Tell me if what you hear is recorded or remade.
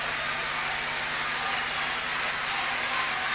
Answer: recorded